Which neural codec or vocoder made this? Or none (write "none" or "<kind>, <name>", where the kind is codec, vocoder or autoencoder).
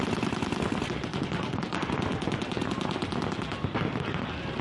none